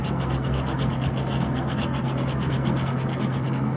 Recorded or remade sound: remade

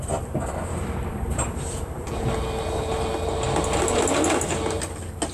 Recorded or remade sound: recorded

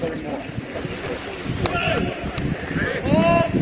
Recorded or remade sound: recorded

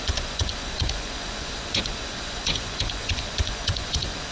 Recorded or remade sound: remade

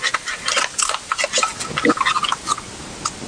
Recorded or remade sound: recorded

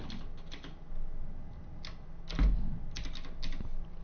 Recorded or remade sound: recorded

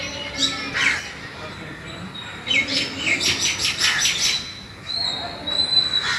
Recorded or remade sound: recorded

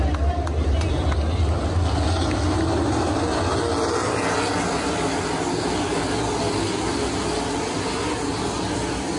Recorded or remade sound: recorded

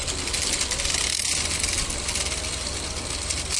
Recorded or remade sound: recorded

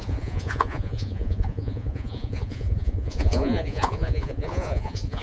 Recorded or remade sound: remade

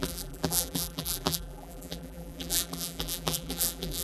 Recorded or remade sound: remade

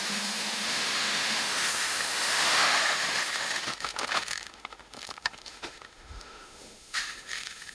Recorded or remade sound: remade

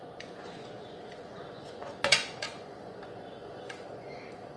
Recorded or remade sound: remade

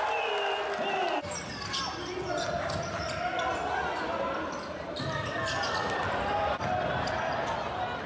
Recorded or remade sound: recorded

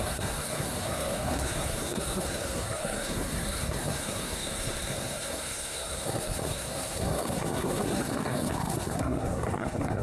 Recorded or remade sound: remade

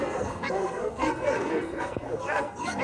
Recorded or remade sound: remade